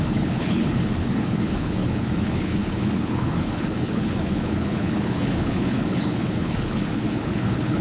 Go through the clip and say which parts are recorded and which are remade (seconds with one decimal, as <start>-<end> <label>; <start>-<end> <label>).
0.0-7.8 remade